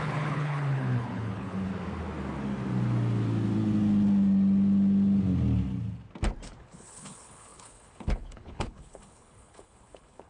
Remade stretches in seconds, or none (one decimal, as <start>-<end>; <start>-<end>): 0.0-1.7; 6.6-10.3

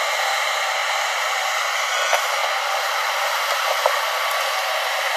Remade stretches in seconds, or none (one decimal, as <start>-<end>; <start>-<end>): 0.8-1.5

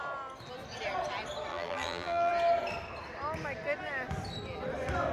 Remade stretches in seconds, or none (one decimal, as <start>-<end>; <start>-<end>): 1.5-2.3

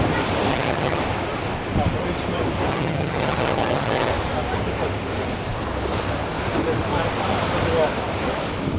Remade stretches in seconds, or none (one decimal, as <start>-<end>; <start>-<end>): 0.5-1.0; 2.7-4.1